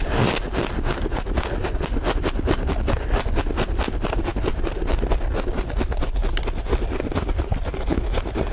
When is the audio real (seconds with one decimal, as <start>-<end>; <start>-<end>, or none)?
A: 0.0-8.5